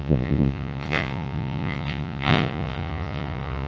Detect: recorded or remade remade